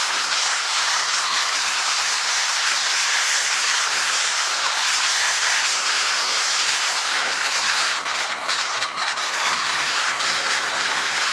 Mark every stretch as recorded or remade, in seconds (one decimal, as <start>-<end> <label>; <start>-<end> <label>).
0.0-11.3 remade

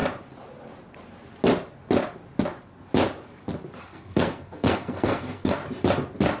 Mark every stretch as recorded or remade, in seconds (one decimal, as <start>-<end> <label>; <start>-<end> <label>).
0.0-3.8 recorded; 3.8-5.6 remade; 5.6-6.4 recorded

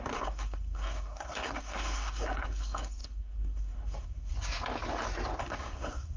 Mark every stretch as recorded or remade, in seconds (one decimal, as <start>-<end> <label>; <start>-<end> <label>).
0.0-4.3 remade; 4.3-5.4 recorded; 5.4-6.2 remade

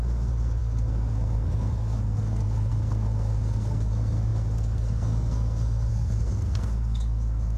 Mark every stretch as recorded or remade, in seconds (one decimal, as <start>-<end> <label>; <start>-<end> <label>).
0.0-7.6 remade

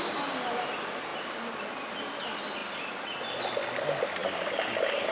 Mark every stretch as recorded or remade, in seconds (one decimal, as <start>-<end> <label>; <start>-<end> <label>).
0.0-5.1 recorded

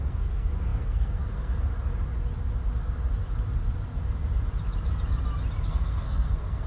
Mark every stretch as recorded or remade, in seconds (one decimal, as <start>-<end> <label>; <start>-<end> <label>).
0.0-1.7 remade; 1.7-5.7 recorded; 5.7-6.7 remade

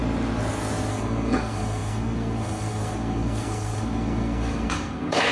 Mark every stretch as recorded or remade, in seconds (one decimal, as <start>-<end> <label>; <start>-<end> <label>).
0.0-0.9 recorded; 0.9-5.3 remade